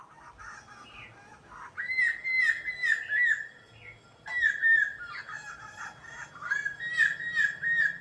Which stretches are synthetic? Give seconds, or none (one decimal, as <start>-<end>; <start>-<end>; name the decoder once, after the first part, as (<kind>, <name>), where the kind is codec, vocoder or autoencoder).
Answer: none